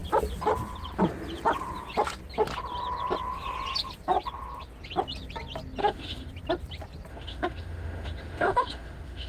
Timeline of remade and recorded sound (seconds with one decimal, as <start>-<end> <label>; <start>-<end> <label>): 0.0-5.8 recorded; 5.8-6.3 remade; 6.3-7.1 recorded; 7.1-9.3 remade